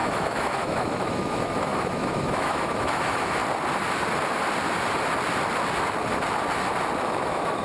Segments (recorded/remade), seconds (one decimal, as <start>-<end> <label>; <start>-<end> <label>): 0.0-3.4 remade; 3.4-7.0 recorded; 7.0-7.6 remade